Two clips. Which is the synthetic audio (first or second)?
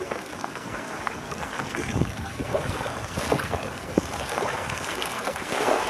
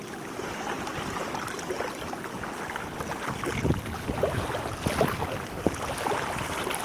first